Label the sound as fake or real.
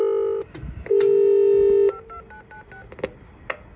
real